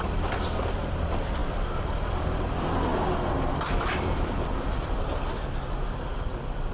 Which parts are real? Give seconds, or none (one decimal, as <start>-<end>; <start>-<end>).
2.9-3.5; 5.1-6.3